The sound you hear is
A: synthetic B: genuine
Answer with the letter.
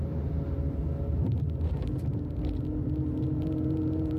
B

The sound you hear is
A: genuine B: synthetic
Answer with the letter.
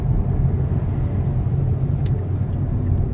A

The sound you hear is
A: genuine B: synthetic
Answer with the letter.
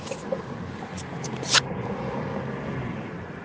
A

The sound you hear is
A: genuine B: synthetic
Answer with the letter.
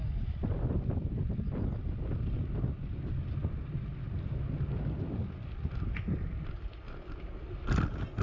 A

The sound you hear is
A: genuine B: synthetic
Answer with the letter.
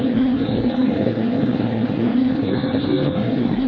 B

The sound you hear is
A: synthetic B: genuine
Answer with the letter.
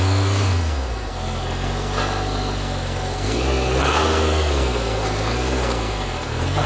A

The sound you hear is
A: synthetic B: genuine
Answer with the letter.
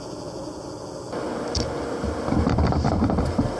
B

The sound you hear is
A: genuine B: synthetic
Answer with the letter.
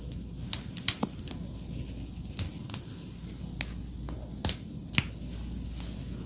A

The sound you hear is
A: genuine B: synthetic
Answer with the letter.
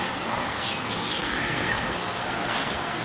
B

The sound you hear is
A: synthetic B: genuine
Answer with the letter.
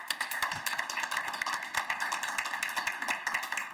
B